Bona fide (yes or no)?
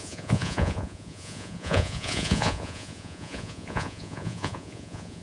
no